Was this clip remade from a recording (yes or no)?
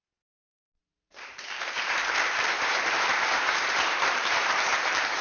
yes